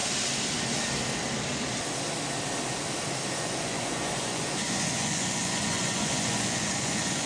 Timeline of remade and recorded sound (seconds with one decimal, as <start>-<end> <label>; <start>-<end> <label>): 0.0-3.3 recorded; 3.3-7.3 remade